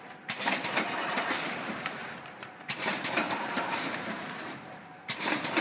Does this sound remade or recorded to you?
remade